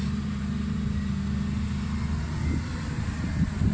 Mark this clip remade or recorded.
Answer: recorded